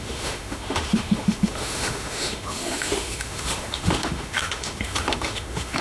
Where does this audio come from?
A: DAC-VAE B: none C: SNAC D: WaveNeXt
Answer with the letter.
A